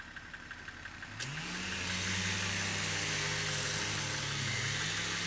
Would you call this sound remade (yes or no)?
no